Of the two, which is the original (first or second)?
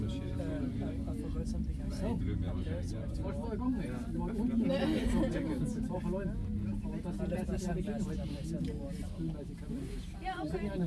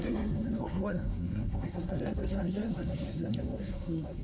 first